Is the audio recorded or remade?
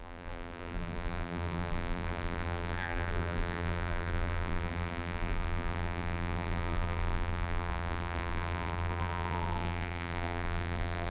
remade